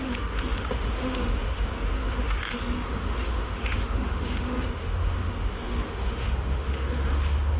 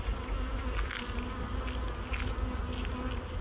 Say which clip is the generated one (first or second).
first